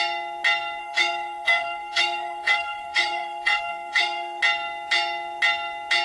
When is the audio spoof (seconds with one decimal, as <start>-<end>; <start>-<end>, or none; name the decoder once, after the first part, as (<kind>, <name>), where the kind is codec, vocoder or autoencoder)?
0.8-4.4 (codec, SNAC)